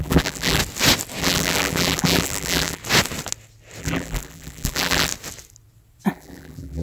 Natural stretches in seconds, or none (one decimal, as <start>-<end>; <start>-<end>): 0.6-1.2; 2.8-3.8; 5.1-6.1